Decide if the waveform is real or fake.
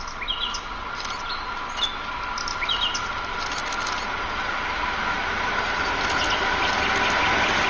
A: real